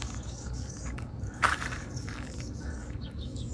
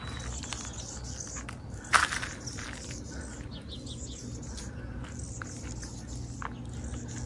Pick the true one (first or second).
second